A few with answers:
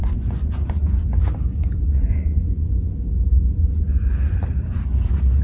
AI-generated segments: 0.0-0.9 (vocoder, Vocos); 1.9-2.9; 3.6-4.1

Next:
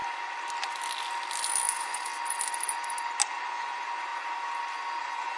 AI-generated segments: 1.7-2.1 (vocoder, Vocos); 3.3-4.1; 5.0-5.4

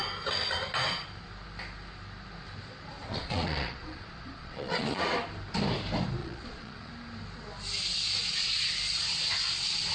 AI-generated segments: 3.0-5.0 (vocoder, Vocos); 6.2-6.9